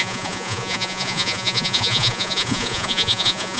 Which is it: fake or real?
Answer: fake